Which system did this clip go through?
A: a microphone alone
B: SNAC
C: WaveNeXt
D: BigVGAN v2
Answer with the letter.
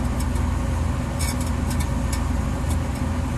A